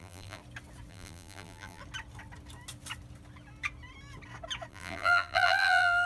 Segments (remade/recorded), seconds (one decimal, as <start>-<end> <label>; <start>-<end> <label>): 0.0-0.4 remade; 0.4-0.9 recorded; 0.9-1.8 remade; 1.8-4.7 recorded; 4.7-6.1 remade